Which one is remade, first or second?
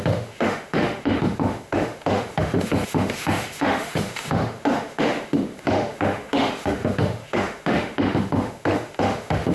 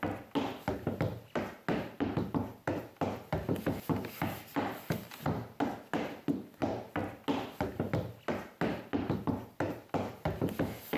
first